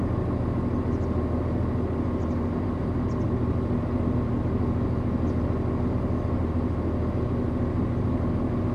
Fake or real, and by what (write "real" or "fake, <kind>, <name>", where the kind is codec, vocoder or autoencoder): real